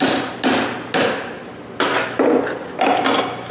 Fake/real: real